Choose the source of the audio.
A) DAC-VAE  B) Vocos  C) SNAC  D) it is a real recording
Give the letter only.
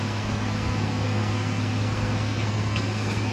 C